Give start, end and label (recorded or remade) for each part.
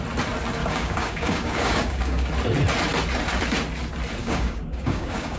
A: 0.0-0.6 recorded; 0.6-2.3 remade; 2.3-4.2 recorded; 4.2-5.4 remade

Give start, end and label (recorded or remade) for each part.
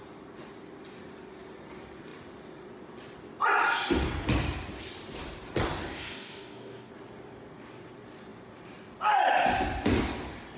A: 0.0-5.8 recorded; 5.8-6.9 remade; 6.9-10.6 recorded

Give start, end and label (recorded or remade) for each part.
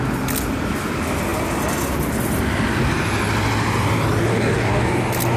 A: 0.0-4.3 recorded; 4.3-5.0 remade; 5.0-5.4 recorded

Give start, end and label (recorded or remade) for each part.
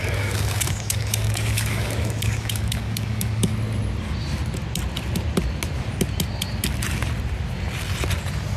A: 0.0-3.5 remade; 3.5-8.6 recorded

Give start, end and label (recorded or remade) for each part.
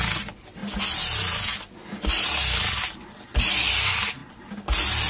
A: 0.0-5.1 recorded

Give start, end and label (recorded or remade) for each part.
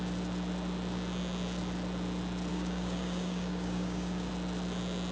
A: 0.0-2.5 recorded; 2.5-4.3 remade; 4.3-5.1 recorded